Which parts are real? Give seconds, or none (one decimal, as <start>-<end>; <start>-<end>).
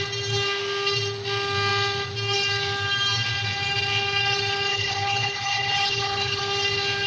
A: 0.0-4.7; 6.4-7.1